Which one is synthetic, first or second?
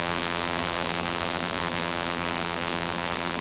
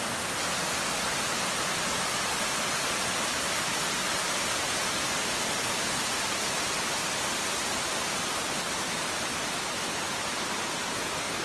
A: first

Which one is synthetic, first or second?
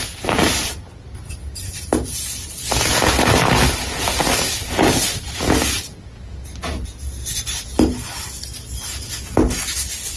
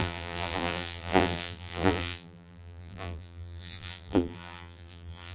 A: second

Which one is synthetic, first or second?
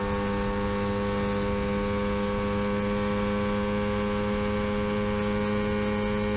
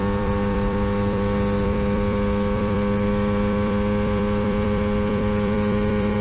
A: second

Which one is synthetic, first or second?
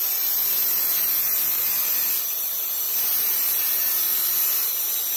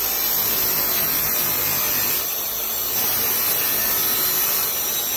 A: first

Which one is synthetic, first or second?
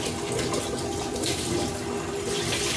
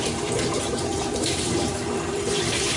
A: second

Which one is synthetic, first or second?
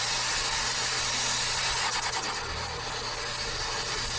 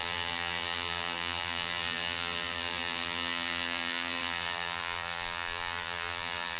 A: second